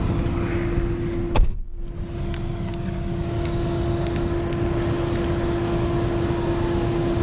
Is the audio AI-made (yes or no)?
no